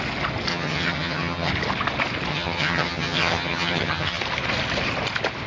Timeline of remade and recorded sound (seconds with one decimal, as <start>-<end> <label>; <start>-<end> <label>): 0.0-0.5 recorded; 0.5-1.5 remade; 1.5-2.3 recorded; 2.3-4.2 remade; 4.2-5.5 recorded